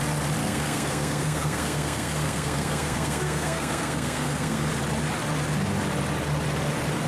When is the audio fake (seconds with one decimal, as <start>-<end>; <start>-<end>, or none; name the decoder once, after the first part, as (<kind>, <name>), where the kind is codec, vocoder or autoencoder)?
0.4-4.7 (codec, SNAC)

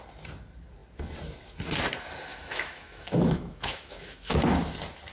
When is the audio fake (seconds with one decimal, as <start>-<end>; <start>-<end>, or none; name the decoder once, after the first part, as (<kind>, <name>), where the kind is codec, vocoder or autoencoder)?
2.3-4.5 (autoencoder, DAC-VAE)

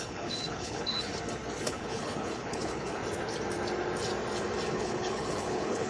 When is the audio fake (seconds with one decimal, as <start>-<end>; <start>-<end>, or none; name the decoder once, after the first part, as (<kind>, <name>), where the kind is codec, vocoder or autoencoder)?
0.0-1.1 (codec, HILCodec); 1.6-3.0; 4.7-5.9

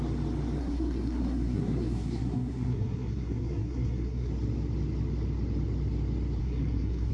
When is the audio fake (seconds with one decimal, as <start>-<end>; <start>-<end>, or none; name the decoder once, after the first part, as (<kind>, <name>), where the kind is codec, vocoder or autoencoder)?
0.6-4.3 (codec, SNAC); 6.4-7.1